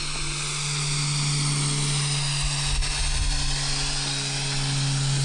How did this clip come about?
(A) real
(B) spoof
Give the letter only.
A